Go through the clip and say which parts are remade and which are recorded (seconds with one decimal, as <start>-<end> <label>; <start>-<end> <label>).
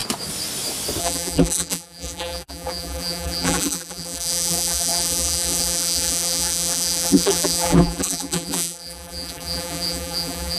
0.0-1.0 recorded; 1.0-10.6 remade